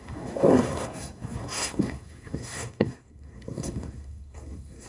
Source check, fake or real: fake